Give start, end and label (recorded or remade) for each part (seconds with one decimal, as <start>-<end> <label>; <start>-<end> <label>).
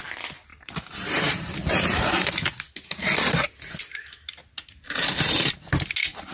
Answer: 0.0-0.5 recorded; 0.5-2.3 remade; 2.3-6.3 recorded